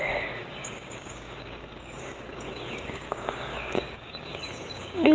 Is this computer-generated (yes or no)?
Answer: yes